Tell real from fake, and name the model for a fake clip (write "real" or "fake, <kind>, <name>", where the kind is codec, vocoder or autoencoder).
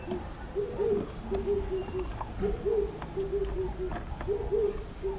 real